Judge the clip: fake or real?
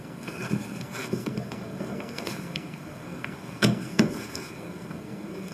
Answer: fake